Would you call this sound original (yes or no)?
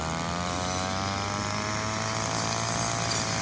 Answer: yes